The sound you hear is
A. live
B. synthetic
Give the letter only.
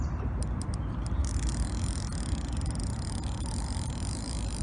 A